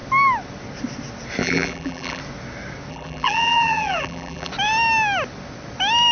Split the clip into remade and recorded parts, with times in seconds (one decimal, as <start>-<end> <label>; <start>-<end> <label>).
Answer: 0.0-1.4 recorded; 1.4-2.2 remade; 2.2-2.9 recorded; 2.9-4.5 remade; 4.5-6.1 recorded